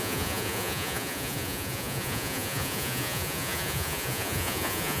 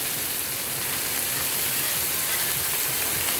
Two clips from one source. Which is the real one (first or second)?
second